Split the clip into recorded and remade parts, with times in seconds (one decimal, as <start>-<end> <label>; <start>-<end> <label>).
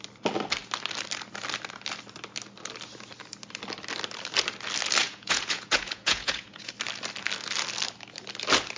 0.0-5.0 recorded; 5.0-6.7 remade; 6.7-8.8 recorded